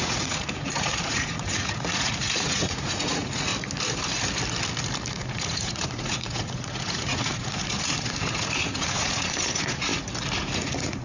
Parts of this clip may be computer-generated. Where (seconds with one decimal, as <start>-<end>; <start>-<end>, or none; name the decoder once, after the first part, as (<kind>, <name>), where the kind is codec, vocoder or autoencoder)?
0.0-3.5 (vocoder, Vocos); 5.1-9.9; 10.4-11.0